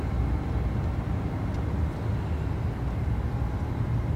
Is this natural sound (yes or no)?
yes